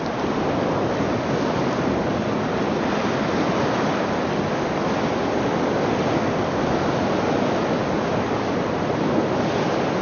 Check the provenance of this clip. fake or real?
real